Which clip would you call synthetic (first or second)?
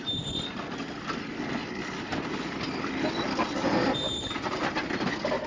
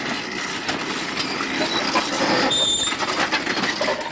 first